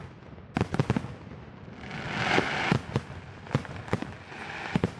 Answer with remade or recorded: recorded